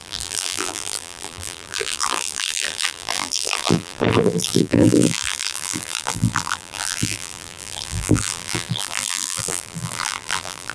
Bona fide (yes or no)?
no